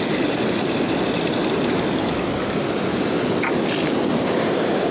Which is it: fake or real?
real